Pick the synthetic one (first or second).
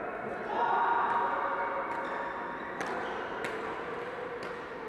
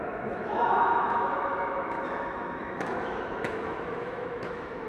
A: second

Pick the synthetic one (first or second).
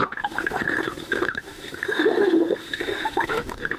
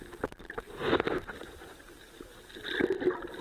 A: first